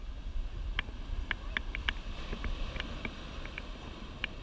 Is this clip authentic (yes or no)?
yes